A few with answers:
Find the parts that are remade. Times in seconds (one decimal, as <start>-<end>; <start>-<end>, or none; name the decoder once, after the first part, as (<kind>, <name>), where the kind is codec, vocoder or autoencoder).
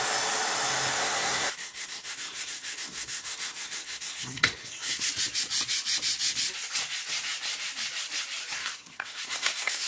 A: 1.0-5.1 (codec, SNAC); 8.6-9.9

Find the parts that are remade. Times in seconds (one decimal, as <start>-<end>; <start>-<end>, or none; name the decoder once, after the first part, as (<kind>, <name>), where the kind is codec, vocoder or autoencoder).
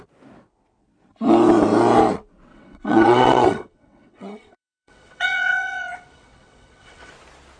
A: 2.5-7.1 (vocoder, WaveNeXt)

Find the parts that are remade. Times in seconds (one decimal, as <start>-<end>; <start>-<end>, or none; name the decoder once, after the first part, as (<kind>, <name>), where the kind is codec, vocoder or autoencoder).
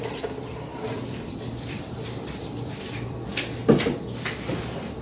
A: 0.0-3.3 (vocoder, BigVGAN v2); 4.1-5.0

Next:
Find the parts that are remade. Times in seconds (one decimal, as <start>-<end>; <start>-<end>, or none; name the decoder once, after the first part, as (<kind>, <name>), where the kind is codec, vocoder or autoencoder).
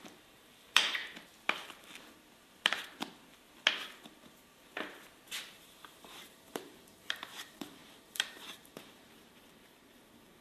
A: 0.0-1.0 (vocoder, BigVGAN v2); 5.4-10.4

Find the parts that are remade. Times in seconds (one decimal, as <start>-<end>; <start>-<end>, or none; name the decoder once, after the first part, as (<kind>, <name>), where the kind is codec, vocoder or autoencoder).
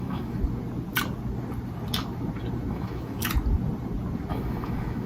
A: 0.0-0.4 (autoencoder, DAC-VAE); 2.7-3.2; 4.3-5.1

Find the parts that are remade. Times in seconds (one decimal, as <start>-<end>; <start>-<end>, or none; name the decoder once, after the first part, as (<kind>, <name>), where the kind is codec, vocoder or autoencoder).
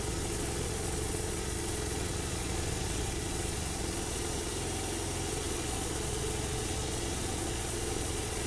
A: 0.0-4.5 (vocoder, Vocos); 5.3-8.5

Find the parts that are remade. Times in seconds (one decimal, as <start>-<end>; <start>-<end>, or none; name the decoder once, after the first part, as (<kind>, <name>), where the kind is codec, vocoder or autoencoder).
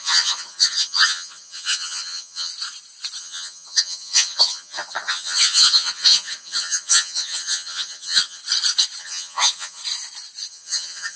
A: 0.0-2.5 (vocoder, HiFi-GAN); 3.2-8.4; 9.0-9.8; 10.5-11.2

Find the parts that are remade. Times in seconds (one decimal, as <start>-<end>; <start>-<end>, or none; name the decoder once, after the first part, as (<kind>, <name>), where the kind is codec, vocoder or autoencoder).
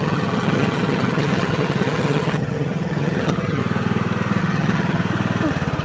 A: 0.0-3.6 (vocoder, HiFi-GAN); 4.4-5.0